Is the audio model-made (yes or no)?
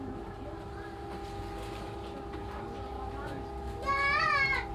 no